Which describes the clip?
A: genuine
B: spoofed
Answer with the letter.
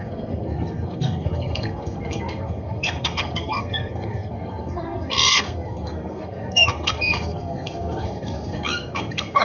B